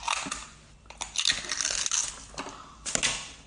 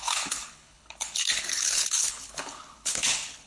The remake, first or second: second